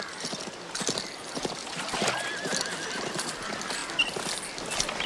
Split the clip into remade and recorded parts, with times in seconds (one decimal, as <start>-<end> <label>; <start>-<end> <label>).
0.0-2.5 recorded; 2.5-3.4 remade; 3.4-5.1 recorded